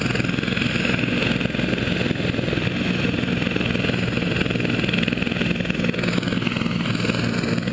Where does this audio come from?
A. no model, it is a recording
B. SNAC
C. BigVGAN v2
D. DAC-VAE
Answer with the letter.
A